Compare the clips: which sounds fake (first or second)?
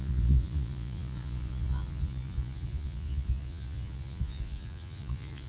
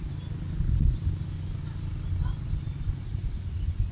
first